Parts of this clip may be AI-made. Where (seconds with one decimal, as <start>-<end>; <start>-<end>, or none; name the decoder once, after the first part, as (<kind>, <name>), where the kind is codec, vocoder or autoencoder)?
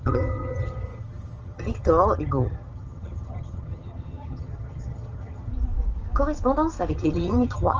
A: 0.0-5.5 (vocoder, HiFi-GAN); 6.9-7.8